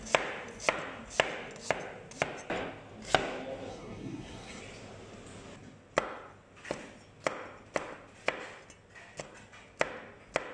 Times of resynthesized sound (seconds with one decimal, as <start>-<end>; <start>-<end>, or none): 3.7-4.6